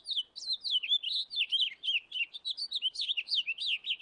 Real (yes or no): yes